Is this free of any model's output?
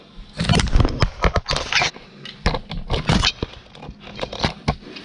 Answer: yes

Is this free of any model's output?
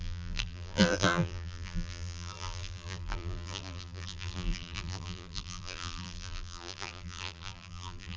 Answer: no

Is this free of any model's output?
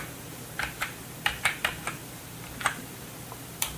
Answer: no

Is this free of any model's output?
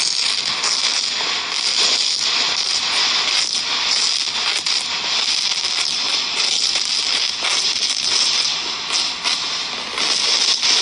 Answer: yes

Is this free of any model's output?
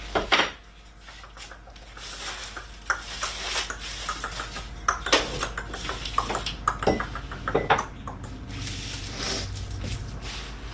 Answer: yes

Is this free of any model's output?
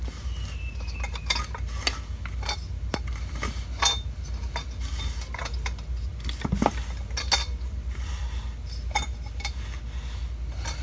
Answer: yes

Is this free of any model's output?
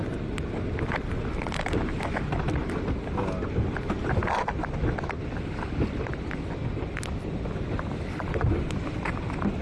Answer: yes